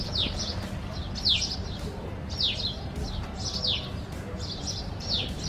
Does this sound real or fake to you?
real